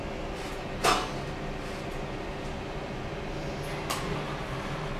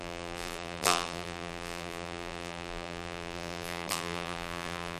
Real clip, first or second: first